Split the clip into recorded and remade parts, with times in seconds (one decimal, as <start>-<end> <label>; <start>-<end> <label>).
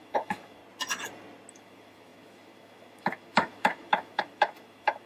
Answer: 0.0-0.6 remade; 0.6-1.5 recorded; 1.5-5.1 remade